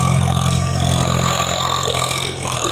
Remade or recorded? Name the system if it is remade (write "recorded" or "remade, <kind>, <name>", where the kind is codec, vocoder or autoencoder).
remade, codec, SNAC